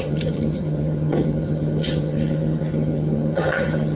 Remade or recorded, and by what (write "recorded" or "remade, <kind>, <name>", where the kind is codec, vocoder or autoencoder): remade, vocoder, HiFi-GAN